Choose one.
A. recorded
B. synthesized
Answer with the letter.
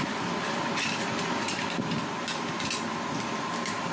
B